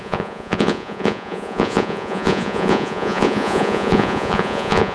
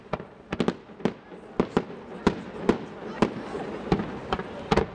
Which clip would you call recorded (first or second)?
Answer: second